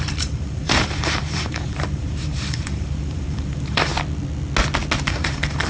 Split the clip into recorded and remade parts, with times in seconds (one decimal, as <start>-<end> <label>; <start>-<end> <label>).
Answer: 0.0-3.9 remade; 3.9-5.0 recorded; 5.0-5.7 remade